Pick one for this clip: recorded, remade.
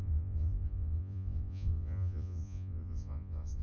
remade